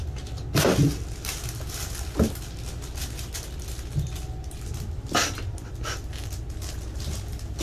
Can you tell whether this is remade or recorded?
recorded